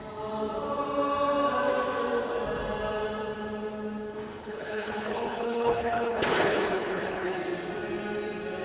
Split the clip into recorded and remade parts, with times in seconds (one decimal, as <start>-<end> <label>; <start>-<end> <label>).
0.0-4.3 recorded; 4.3-7.4 remade; 7.4-8.6 recorded

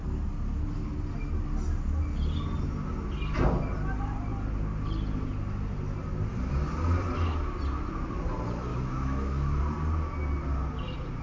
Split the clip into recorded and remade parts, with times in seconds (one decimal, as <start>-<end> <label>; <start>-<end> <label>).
0.0-8.7 recorded; 8.7-9.6 remade; 9.6-11.2 recorded